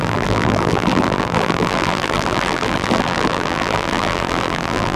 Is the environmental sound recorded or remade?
remade